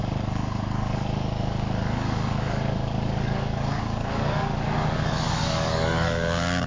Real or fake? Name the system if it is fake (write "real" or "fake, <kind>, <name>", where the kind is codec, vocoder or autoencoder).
fake, codec, DAC